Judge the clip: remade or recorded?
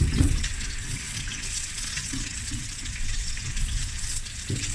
remade